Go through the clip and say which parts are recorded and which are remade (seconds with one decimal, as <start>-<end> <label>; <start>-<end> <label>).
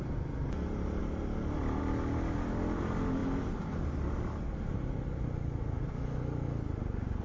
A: 0.0-7.2 recorded